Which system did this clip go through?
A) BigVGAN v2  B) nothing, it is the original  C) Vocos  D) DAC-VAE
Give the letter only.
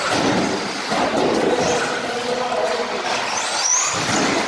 B